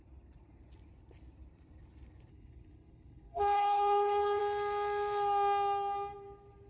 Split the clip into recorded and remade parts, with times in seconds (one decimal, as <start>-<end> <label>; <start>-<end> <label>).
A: 0.0-2.3 recorded; 2.3-4.4 remade; 4.4-6.7 recorded